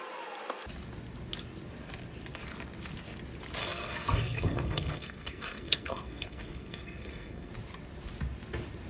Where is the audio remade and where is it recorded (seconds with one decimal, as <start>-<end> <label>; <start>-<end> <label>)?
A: 0.0-3.6 recorded; 3.6-7.5 remade; 7.5-8.9 recorded